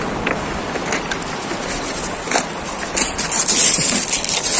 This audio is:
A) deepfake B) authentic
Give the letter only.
B